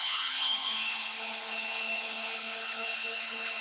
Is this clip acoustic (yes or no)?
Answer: no